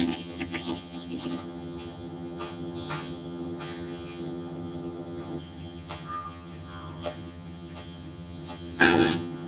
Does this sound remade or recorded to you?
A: remade